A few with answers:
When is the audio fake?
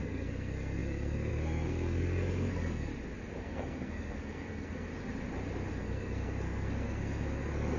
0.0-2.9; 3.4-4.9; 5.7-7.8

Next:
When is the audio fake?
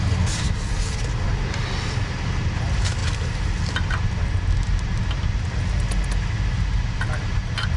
none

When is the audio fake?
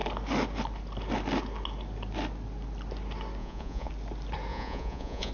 3.4-3.9; 4.5-5.3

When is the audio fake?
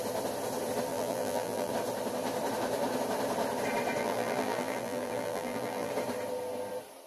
0.9-1.7; 4.0-5.9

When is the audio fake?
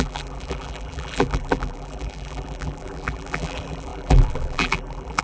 0.0-5.2